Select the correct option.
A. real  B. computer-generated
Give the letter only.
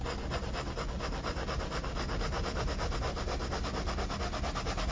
A